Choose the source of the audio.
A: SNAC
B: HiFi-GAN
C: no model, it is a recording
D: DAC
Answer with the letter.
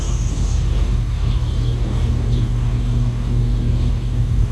D